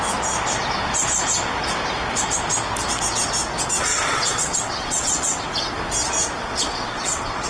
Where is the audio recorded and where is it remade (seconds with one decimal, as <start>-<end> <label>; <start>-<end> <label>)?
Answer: 0.0-3.9 recorded; 3.9-5.7 remade; 5.7-6.7 recorded; 6.7-7.5 remade